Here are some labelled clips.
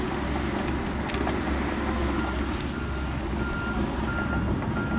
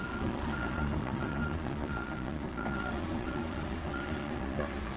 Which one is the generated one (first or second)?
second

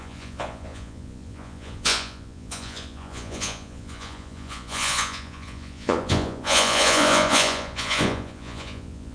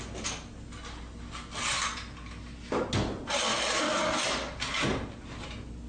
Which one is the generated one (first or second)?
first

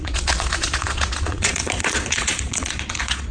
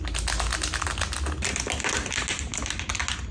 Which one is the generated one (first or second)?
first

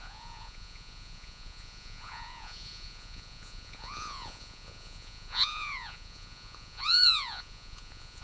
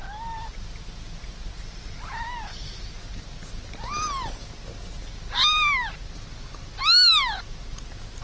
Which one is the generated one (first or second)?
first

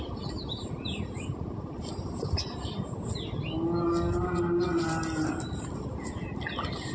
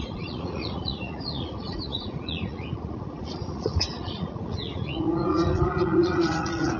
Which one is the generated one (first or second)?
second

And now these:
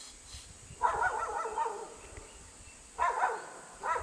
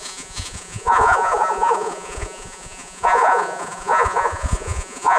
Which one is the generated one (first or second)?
second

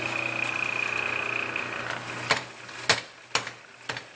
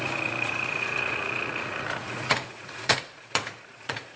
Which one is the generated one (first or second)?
second